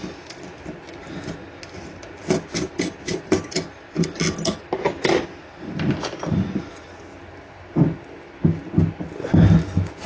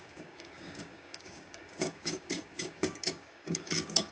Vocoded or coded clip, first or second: second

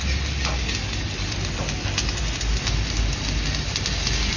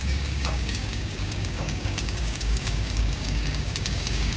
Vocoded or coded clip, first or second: second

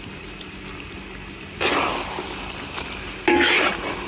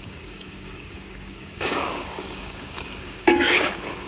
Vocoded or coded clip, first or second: second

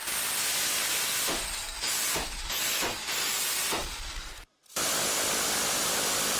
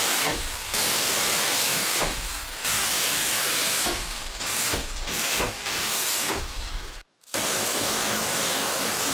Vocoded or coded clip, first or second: second